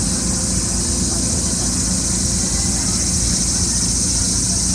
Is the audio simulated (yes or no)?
no